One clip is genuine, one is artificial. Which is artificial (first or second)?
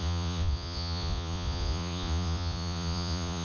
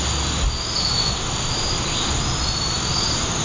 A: first